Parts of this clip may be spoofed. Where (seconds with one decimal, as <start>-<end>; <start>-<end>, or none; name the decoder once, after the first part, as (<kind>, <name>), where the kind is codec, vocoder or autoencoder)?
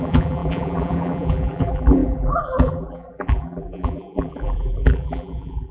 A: 0.0-5.7 (vocoder, BigVGAN v2)